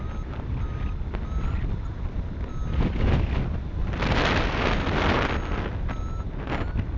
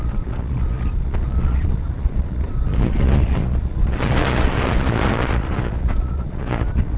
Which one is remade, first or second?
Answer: second